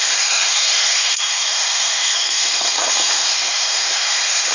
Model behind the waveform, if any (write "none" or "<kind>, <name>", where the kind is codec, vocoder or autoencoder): codec, SNAC